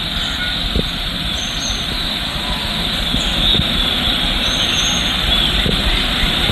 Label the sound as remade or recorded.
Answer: recorded